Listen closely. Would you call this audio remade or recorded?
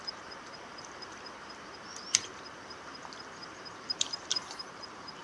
remade